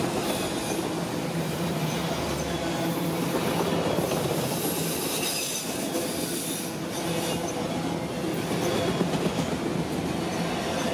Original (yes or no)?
yes